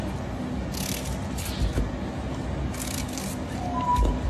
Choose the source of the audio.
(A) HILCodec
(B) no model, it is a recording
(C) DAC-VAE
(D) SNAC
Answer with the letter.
B